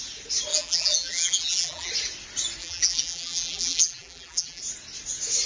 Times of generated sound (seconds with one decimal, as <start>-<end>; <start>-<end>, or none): 0.5-1.9; 2.6-4.6

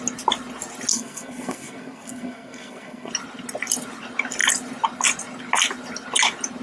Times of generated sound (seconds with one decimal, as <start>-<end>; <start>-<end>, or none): 0.9-3.1

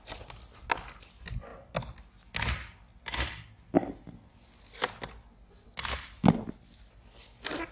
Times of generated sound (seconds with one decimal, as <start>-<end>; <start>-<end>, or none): none

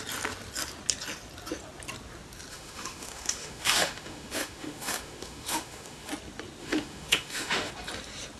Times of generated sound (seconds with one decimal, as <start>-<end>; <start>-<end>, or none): 2.5-6.1; 6.6-7.7

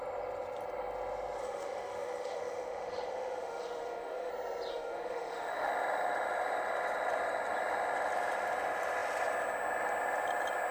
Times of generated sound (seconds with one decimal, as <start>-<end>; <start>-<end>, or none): 1.4-4.3; 4.7-5.7